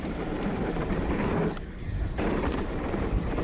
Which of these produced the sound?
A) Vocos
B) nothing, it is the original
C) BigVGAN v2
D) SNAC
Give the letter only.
C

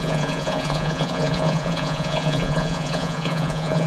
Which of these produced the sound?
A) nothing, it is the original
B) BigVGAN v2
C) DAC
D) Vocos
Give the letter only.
D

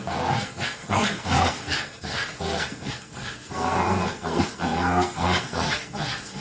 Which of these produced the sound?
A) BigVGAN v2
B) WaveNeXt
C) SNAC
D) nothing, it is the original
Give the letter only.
C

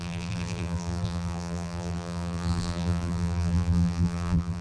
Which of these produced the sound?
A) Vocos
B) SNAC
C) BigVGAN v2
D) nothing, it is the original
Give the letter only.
C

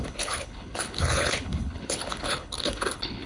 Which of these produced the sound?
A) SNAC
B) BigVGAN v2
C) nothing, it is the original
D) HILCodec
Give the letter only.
D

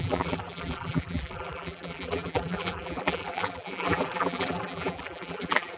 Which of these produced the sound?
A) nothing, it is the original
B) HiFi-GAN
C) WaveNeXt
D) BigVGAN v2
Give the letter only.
D